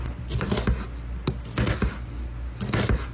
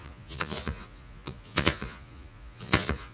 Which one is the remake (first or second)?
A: second